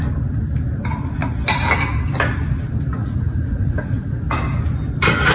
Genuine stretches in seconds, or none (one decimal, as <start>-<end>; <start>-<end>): 0.0-3.0; 4.2-5.3